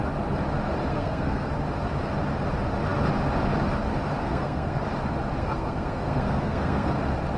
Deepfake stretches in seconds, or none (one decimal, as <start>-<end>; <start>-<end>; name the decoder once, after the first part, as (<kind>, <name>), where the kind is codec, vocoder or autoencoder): 0.9-1.5 (codec, SNAC); 4.2-4.8; 5.4-6.9